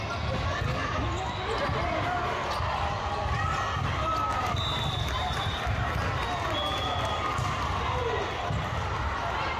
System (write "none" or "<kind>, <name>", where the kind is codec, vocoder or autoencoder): none